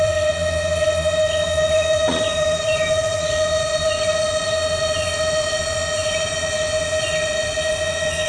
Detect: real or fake fake